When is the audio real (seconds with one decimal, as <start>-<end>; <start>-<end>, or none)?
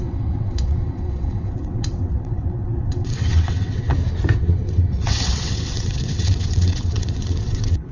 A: 3.9-4.4